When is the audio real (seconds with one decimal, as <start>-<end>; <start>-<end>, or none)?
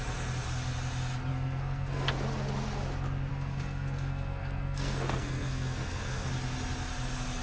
0.0-1.3; 2.1-3.3; 6.3-7.4